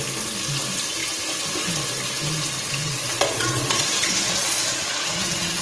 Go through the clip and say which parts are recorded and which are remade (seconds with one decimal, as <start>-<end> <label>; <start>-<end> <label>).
0.0-2.8 recorded; 2.8-5.6 remade

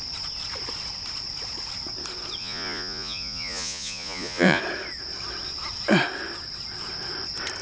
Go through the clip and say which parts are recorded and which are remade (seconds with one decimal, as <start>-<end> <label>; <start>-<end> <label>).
0.0-2.4 recorded; 2.4-4.6 remade; 4.6-7.6 recorded

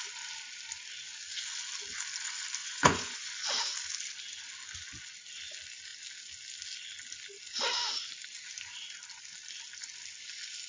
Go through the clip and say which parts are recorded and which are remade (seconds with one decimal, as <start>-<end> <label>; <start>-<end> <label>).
0.0-2.6 recorded; 2.6-3.3 remade; 3.3-10.7 recorded

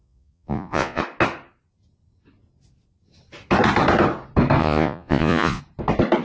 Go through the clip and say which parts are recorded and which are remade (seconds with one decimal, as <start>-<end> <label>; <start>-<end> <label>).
0.0-1.0 remade; 1.0-4.6 recorded; 4.6-5.6 remade; 5.6-6.2 recorded

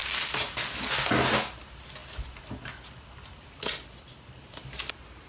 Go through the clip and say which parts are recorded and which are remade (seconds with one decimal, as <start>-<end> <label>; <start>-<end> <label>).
0.0-5.3 recorded

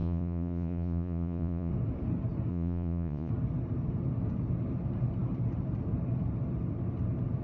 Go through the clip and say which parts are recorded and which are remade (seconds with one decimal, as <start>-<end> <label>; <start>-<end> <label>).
0.0-1.7 remade; 1.7-2.5 recorded; 2.5-3.3 remade; 3.3-7.4 recorded